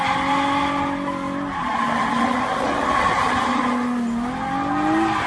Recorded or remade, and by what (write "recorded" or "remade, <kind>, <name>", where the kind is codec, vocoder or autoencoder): recorded